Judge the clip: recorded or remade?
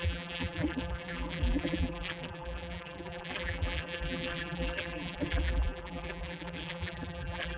remade